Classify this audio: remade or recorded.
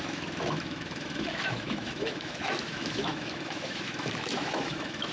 remade